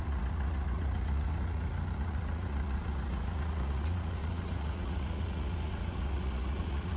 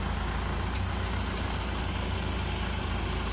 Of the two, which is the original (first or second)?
second